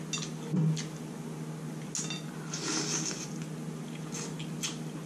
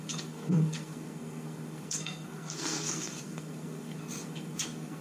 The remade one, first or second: second